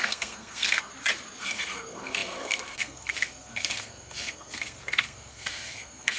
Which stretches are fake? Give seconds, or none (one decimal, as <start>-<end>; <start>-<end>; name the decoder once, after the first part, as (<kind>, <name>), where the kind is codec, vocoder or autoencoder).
0.0-0.9 (codec, SNAC); 1.4-6.2